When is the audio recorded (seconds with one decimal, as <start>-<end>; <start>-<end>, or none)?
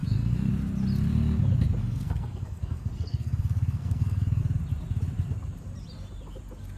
0.5-1.8; 4.4-6.8